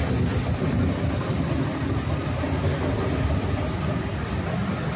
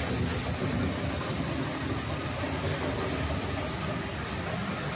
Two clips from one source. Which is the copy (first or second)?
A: first